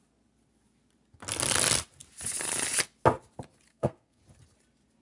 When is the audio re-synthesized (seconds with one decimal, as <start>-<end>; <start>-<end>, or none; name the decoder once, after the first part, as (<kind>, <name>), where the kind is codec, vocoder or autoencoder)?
3.7-4.2 (codec, SNAC)